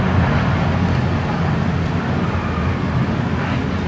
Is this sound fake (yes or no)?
no